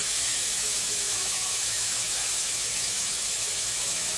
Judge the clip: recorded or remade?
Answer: remade